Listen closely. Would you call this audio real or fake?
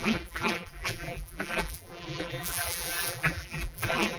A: fake